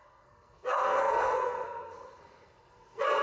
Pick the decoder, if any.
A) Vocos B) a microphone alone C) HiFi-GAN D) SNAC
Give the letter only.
D